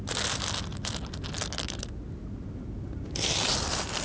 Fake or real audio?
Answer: real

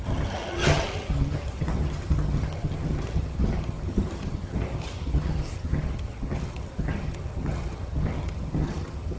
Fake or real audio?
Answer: fake